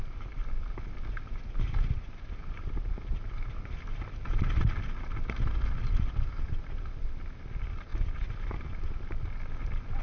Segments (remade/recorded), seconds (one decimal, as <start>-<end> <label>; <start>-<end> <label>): 0.0-2.4 recorded; 2.4-2.9 remade; 2.9-7.9 recorded; 7.9-8.5 remade; 8.5-10.0 recorded